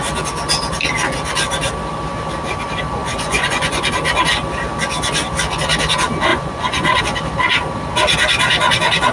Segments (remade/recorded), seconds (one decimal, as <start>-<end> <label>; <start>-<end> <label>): 0.0-3.0 recorded; 3.0-3.8 remade; 3.8-6.3 recorded; 6.3-7.0 remade; 7.0-9.1 recorded

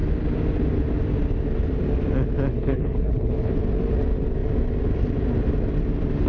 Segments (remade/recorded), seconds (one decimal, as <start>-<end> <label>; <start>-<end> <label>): 0.0-2.5 recorded; 2.5-3.5 remade; 3.5-6.3 recorded